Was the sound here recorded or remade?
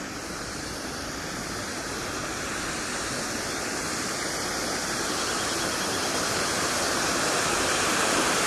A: recorded